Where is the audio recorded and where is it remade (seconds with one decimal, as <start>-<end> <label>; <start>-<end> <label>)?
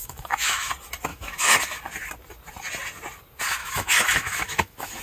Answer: 0.0-0.7 remade; 0.7-1.1 recorded; 1.1-1.6 remade; 1.6-3.6 recorded; 3.6-5.0 remade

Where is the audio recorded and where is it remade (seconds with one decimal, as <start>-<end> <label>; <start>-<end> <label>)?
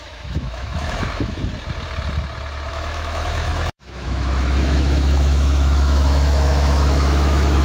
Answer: 0.0-1.4 remade; 1.4-2.7 recorded; 2.7-7.6 remade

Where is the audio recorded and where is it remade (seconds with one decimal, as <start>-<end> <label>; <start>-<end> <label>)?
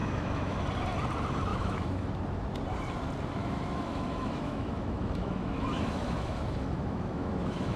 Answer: 0.0-0.6 remade; 0.6-1.5 recorded; 1.5-2.1 remade; 2.1-3.4 recorded; 3.4-7.8 remade